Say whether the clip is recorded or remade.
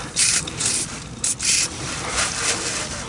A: remade